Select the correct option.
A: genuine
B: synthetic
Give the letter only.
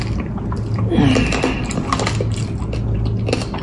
A